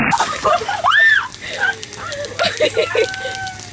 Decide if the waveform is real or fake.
real